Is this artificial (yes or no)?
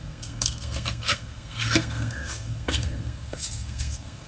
yes